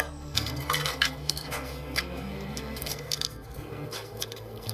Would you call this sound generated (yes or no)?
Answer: yes